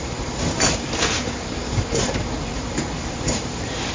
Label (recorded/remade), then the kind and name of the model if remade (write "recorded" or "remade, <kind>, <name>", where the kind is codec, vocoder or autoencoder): remade, vocoder, BigVGAN v2